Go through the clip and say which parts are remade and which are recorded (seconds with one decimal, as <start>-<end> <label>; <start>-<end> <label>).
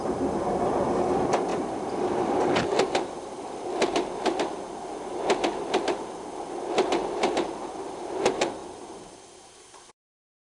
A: 0.0-1.5 recorded; 1.5-3.6 remade; 3.6-7.0 recorded; 7.0-8.2 remade; 8.2-8.6 recorded; 8.6-9.9 remade; 9.9-10.6 recorded